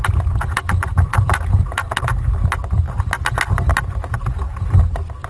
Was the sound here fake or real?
real